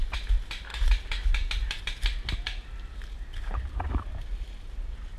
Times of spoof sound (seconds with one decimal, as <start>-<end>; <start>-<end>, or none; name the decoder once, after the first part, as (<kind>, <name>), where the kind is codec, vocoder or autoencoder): 3.3-4.1 (vocoder, BigVGAN v2)